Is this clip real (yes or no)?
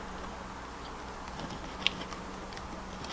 yes